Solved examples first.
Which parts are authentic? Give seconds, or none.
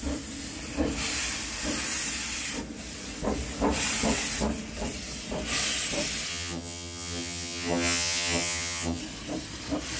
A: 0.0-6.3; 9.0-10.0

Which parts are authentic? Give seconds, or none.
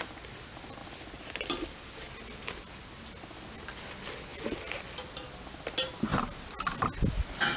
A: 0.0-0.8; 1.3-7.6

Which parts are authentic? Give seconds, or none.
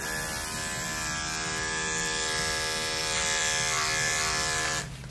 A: 0.0-5.1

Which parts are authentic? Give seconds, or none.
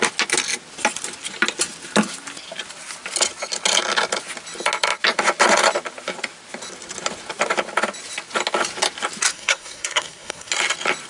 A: 0.0-9.3; 10.5-11.1